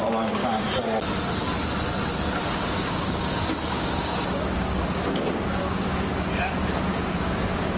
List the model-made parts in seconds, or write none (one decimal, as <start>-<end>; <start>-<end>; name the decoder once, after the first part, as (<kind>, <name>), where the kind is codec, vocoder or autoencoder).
0.0-0.4 (codec, DAC); 2.7-7.8